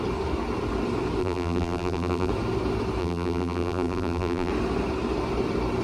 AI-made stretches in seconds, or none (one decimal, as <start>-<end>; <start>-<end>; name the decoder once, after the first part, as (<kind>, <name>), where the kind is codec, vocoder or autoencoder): 1.2-2.3 (vocoder, BigVGAN v2); 3.0-4.5